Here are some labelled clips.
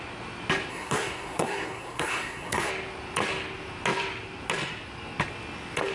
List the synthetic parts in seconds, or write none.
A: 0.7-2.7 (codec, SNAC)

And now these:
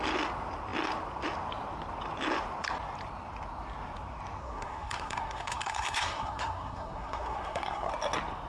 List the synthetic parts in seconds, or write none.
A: 4.4-7.9 (codec, SNAC)

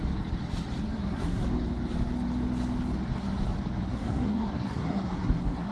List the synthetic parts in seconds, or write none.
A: 0.8-1.4 (codec, SNAC); 3.9-5.7

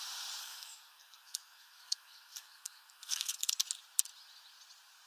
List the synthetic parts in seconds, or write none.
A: 0.4-3.5 (codec, SNAC)

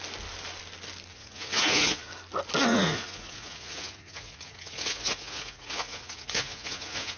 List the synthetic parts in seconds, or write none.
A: 1.1-2.1 (vocoder, Vocos); 2.7-7.2